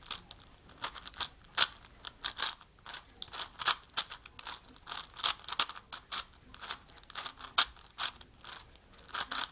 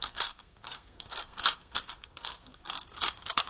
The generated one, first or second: second